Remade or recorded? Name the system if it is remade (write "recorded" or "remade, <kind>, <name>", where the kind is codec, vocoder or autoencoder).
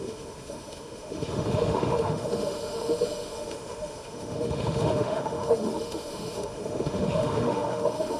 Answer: remade, autoencoder, DAC-VAE